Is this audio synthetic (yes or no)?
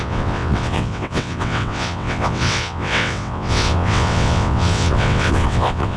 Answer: yes